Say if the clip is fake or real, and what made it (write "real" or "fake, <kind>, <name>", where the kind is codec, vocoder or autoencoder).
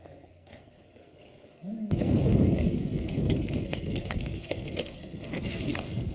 fake, codec, SNAC